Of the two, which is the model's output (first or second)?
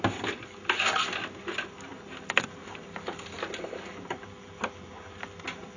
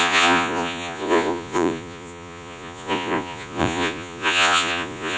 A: second